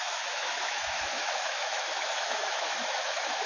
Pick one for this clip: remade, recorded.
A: remade